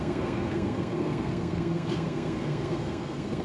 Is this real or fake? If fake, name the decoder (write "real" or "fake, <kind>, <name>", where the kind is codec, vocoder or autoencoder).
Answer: fake, codec, SNAC